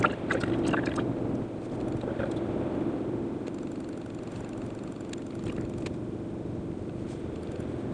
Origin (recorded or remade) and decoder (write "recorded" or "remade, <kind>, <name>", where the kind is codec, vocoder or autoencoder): recorded